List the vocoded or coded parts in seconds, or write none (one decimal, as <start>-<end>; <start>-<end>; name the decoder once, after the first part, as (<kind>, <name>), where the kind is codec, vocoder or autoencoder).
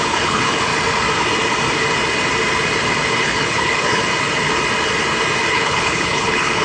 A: 0.0-0.7 (codec, HILCodec); 3.1-4.0; 5.5-6.6